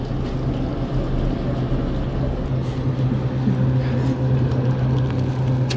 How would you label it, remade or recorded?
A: recorded